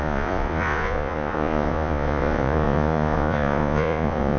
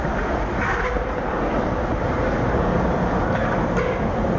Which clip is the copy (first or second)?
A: first